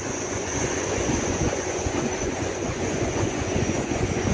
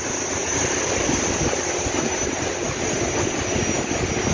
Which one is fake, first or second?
first